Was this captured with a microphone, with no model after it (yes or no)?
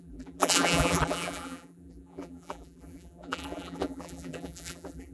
no